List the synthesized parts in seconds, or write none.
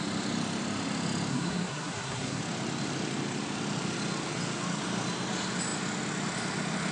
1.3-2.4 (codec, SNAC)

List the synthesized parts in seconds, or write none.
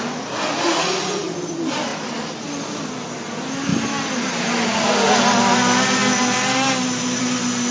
none